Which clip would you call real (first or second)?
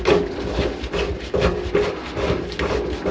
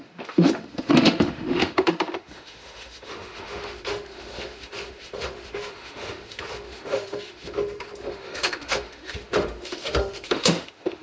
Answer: first